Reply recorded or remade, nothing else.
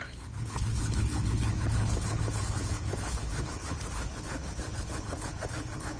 remade